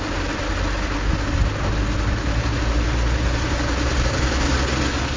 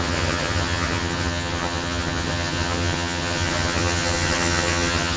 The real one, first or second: first